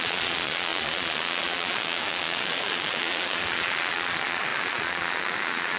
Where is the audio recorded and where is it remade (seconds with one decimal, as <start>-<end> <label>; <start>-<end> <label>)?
0.0-5.8 remade